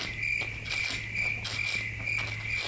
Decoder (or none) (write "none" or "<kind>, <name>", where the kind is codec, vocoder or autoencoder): none